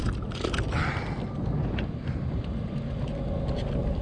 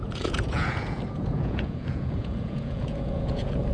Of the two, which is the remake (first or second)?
second